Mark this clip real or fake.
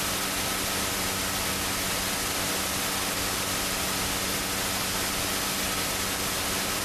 real